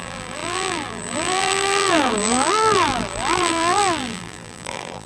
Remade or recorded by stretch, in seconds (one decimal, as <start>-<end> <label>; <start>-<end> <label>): 0.0-5.1 remade